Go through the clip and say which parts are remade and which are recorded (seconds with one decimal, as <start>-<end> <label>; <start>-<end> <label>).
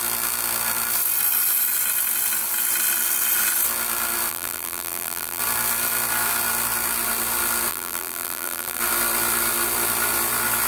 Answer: 0.0-4.3 recorded; 4.3-5.4 remade; 5.4-7.7 recorded; 7.7-8.8 remade; 8.8-10.7 recorded